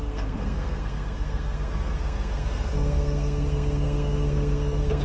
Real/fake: fake